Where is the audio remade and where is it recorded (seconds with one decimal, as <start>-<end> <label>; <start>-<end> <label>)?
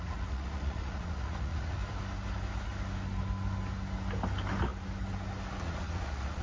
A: 0.0-1.8 remade; 1.8-5.6 recorded; 5.6-6.4 remade